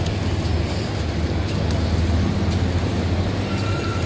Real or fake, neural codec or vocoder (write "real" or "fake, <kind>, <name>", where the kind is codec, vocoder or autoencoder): real